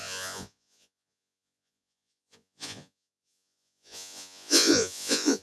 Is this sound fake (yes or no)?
yes